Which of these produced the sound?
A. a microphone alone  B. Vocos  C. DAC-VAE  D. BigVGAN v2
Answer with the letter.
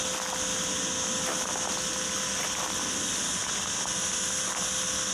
A